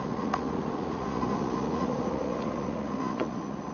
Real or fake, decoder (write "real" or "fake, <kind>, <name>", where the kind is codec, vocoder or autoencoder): fake, vocoder, Vocos